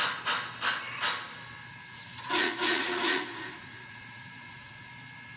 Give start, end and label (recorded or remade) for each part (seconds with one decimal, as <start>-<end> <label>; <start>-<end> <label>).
0.0-1.7 recorded; 1.7-4.9 remade; 4.9-5.4 recorded